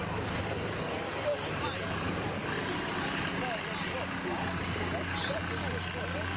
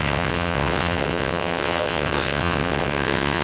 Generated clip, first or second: second